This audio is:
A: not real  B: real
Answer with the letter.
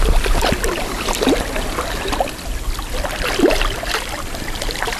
B